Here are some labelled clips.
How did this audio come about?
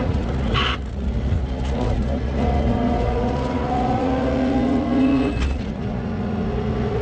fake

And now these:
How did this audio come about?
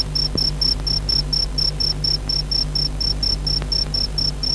real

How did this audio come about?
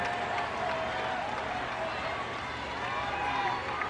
real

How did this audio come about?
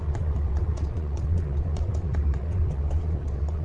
fake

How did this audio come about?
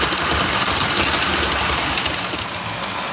real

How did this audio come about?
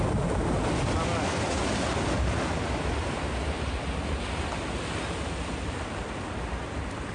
real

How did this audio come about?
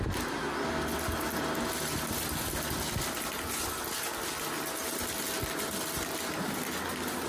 real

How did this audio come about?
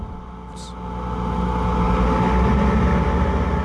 real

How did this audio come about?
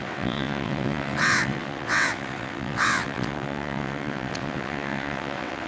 fake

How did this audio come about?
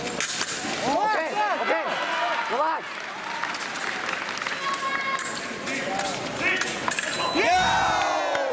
real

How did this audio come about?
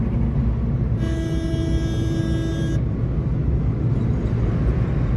real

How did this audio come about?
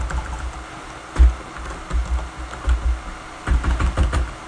real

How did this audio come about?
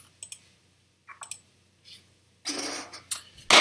real